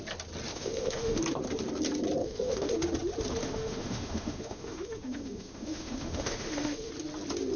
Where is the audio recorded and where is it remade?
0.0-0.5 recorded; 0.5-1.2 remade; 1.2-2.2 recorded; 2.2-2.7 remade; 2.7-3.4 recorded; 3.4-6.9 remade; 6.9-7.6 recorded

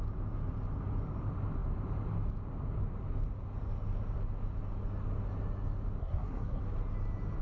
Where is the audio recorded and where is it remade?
0.0-6.0 recorded; 6.0-6.6 remade; 6.6-7.4 recorded

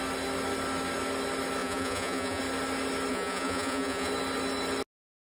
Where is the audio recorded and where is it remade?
0.0-1.6 recorded; 1.6-2.4 remade; 2.4-3.1 recorded; 3.1-4.1 remade; 4.1-5.3 recorded

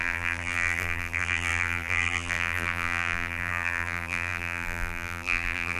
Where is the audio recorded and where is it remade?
0.0-5.8 remade

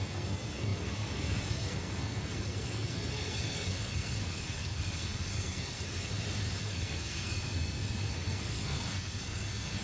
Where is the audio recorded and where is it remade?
0.0-6.1 remade; 6.1-6.6 recorded; 6.6-9.8 remade

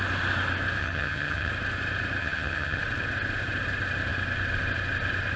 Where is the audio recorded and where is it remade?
0.0-0.8 recorded; 0.8-1.5 remade; 1.5-2.2 recorded; 2.2-2.8 remade; 2.8-5.4 recorded

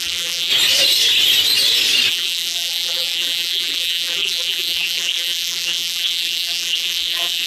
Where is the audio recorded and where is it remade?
0.0-0.5 remade; 0.5-2.1 recorded; 2.1-7.5 remade